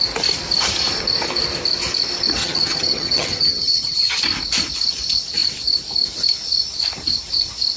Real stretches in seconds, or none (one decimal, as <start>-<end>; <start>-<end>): 0.0-2.4; 4.2-7.8